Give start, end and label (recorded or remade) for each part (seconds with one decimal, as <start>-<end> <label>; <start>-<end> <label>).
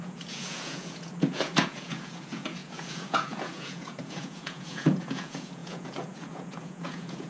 0.0-7.3 remade